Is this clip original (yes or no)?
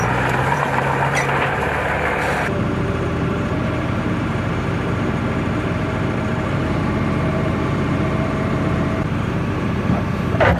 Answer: no